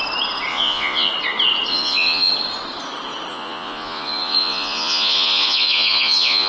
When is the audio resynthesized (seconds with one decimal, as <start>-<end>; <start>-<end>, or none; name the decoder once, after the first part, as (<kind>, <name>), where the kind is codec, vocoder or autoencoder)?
0.5-1.1 (vocoder, Vocos); 1.7-2.3; 3.3-6.5

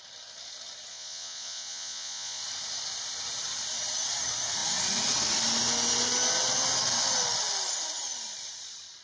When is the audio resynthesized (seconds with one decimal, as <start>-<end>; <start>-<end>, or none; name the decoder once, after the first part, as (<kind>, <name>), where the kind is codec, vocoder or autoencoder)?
0.9-2.4 (vocoder, Vocos)

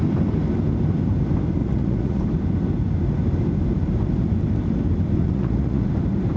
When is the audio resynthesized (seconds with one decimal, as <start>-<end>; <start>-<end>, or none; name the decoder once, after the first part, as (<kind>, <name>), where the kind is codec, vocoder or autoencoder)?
1.6-2.2 (vocoder, Vocos); 5.2-5.9